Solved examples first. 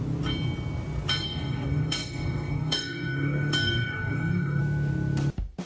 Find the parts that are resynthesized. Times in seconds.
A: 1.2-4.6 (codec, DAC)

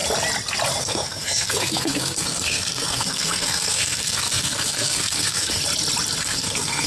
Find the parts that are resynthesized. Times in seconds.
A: 0.8-5.6 (codec, SNAC); 6.2-6.9

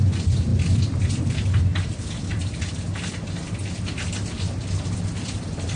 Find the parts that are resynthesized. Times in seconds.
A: none

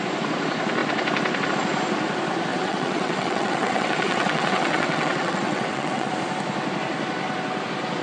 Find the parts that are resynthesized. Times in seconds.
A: 2.5-6.1 (vocoder, WaveNeXt)